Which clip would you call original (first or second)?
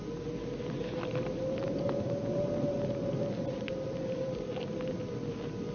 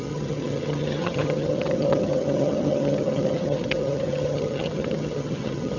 first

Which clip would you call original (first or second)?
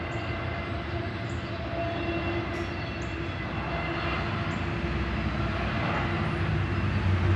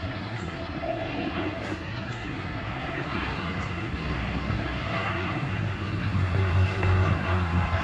first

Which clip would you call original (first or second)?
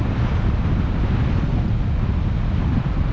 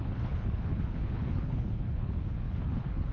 first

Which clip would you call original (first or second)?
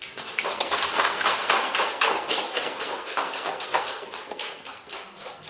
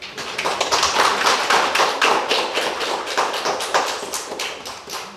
second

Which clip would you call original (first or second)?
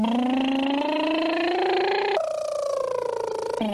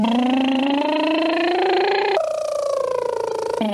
first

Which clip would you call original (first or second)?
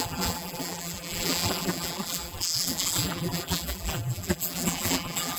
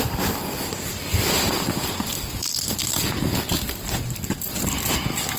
second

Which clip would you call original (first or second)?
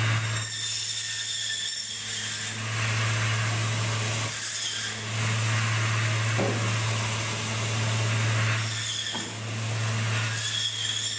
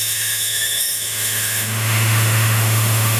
first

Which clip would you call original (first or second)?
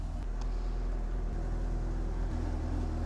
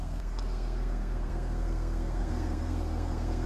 first